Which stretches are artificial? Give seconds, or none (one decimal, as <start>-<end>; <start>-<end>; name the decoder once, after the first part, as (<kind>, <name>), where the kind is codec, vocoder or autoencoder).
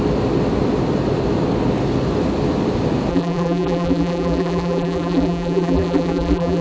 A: 3.1-6.6 (vocoder, BigVGAN v2)